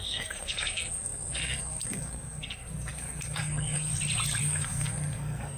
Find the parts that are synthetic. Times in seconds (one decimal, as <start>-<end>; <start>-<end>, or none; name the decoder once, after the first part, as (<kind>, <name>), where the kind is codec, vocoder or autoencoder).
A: 0.0-3.9 (codec, SNAC); 4.4-5.6